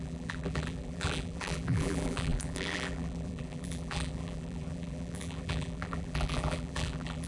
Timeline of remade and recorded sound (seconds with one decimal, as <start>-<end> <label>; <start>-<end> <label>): 0.0-7.3 remade